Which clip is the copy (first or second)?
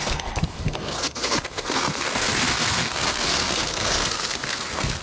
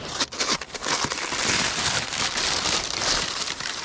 first